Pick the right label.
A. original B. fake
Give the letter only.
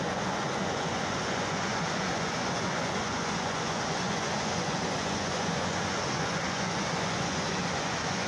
B